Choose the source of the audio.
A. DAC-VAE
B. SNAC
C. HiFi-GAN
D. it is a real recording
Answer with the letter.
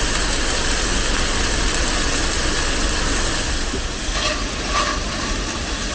D